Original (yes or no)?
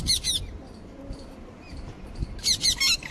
yes